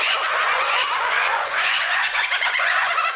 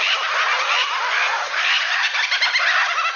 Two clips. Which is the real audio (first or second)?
second